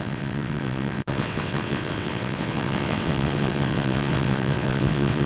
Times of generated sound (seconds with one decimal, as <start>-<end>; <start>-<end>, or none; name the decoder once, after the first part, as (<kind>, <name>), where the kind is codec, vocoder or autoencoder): 0.0-5.3 (vocoder, WaveNeXt)